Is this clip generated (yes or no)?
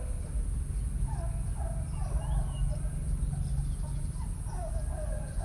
no